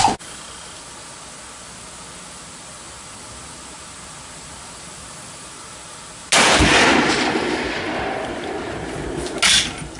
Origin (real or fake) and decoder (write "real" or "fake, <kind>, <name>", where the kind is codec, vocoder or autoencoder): real